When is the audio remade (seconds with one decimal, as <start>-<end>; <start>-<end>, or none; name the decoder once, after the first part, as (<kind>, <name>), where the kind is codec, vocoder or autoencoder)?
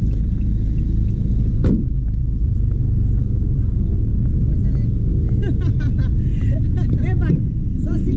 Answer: none